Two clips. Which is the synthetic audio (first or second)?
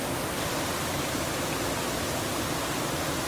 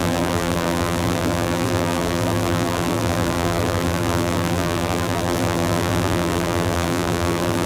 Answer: second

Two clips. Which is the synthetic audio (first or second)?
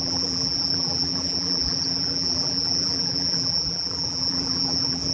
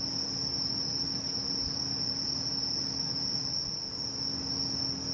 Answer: first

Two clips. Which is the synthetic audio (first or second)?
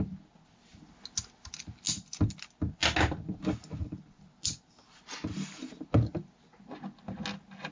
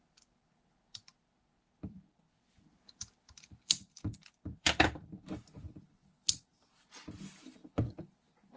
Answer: second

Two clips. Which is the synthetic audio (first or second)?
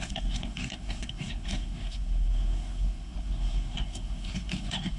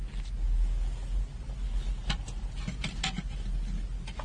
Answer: first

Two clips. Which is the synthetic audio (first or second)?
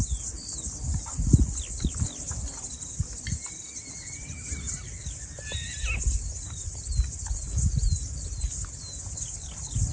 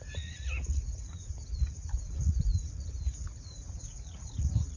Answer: second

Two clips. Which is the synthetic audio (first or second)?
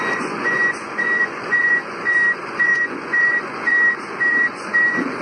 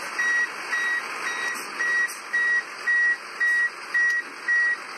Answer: first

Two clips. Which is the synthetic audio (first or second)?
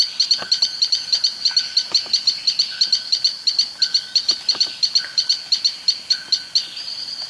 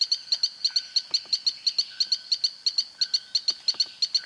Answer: first